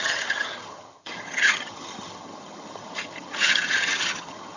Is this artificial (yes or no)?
yes